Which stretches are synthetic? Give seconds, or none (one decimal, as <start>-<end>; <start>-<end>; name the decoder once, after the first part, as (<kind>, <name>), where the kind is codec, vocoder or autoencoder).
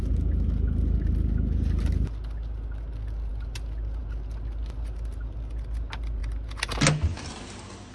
none